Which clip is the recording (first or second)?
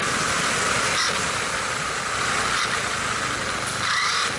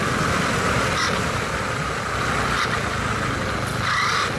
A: first